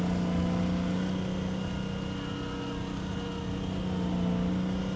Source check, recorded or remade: recorded